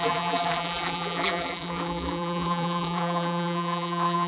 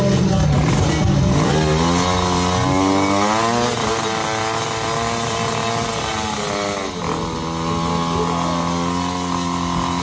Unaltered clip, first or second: second